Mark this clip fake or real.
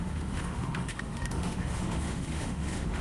fake